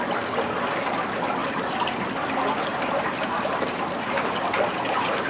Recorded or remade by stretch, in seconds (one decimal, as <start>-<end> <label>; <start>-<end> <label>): 0.0-5.3 recorded